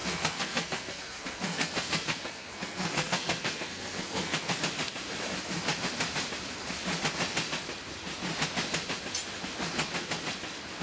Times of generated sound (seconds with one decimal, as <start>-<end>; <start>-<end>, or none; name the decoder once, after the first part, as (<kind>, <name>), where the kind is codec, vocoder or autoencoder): 0.0-4.6 (codec, SNAC)